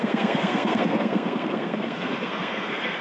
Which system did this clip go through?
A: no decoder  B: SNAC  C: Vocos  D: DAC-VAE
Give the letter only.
B